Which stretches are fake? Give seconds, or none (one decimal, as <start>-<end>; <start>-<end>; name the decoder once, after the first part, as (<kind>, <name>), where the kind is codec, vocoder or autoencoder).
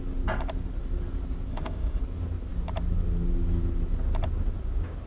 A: 1.5-2.0 (autoencoder, DAC-VAE)